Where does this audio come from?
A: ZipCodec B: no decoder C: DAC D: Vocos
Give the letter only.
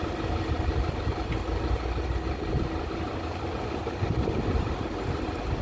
B